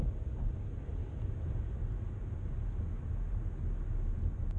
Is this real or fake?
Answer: real